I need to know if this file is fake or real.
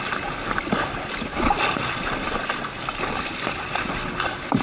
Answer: real